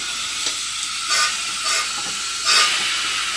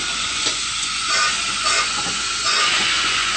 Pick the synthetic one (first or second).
second